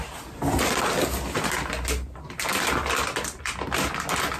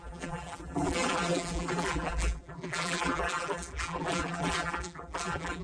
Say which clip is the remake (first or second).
second